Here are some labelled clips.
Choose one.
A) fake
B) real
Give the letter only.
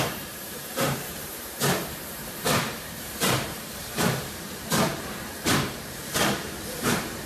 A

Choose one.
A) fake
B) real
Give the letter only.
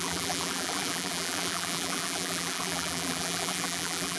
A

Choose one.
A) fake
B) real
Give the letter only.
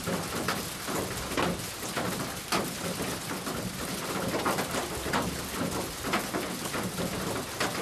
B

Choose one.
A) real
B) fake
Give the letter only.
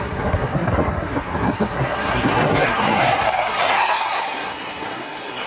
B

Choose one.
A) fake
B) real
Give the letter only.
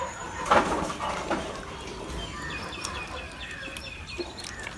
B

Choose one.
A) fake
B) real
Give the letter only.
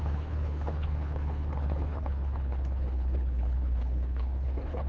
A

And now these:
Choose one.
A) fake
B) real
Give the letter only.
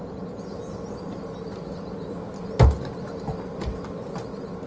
B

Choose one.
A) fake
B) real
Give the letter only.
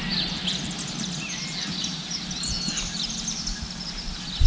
B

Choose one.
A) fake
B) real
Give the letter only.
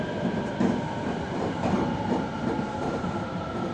A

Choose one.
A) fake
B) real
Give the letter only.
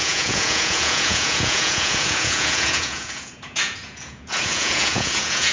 A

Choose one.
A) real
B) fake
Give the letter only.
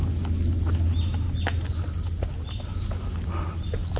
A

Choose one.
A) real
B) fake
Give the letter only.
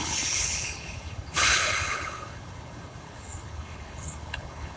B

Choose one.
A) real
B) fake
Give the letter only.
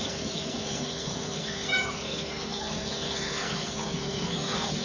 B